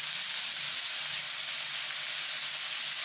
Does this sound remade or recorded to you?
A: recorded